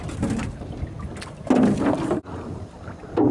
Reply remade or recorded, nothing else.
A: recorded